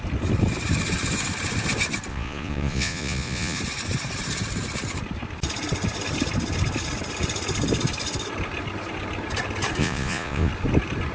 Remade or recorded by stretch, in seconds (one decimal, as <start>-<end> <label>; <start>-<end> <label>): 0.0-2.1 recorded; 2.1-3.6 remade; 3.6-9.8 recorded; 9.8-10.5 remade; 10.5-11.1 recorded